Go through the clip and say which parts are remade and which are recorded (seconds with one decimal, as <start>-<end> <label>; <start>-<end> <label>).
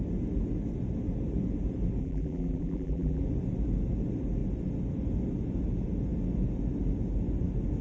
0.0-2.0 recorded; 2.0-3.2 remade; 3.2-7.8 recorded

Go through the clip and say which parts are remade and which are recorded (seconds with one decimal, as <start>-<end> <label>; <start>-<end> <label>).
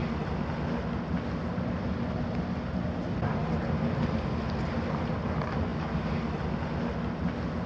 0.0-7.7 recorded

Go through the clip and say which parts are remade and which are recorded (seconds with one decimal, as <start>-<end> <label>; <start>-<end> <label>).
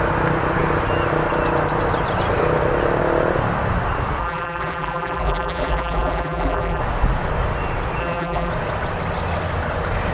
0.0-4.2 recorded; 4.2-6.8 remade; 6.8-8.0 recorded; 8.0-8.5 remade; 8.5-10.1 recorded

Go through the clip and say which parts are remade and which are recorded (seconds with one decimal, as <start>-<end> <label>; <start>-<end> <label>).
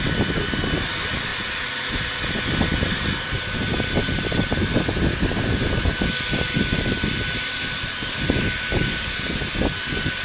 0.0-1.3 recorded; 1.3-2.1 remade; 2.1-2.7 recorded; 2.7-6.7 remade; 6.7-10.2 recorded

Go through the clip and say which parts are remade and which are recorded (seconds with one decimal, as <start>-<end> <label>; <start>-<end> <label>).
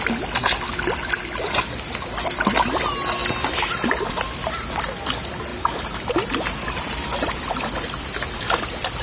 0.0-3.2 recorded; 3.2-3.9 remade; 3.9-5.5 recorded; 5.5-8.6 remade; 8.6-9.0 recorded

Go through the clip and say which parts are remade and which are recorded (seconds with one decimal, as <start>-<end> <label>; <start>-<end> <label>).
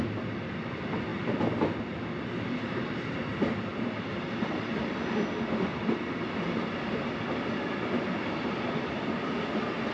0.0-1.1 recorded; 1.1-1.8 remade; 1.8-3.3 recorded; 3.3-4.8 remade; 4.8-5.7 recorded; 5.7-9.4 remade; 9.4-9.9 recorded